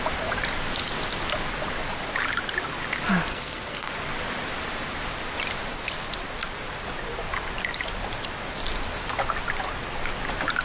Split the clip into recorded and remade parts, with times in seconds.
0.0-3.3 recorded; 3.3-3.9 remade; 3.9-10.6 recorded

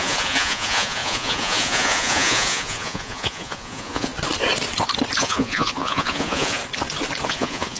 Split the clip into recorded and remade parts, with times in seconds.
0.0-4.1 remade; 4.1-5.2 recorded; 5.2-6.6 remade; 6.6-7.3 recorded; 7.3-7.8 remade

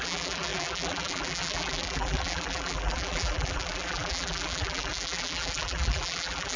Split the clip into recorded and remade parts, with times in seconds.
0.0-6.6 remade